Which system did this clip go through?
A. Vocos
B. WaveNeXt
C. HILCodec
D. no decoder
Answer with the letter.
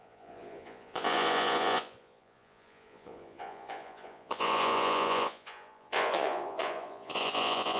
A